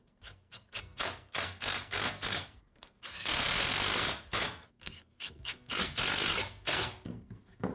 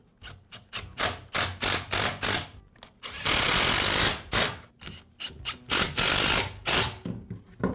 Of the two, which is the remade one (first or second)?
first